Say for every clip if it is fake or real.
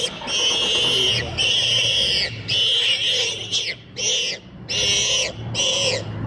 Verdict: real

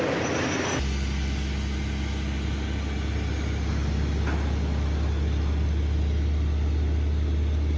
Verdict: real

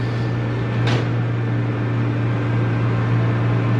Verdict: real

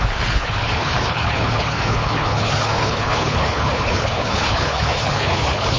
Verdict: fake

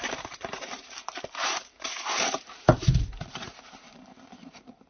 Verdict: fake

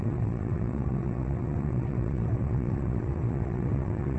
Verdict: fake